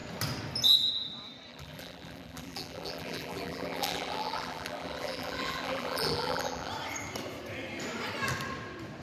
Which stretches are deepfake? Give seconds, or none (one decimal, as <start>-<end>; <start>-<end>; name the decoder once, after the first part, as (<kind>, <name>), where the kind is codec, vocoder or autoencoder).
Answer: 1.5-6.7 (vocoder, BigVGAN v2)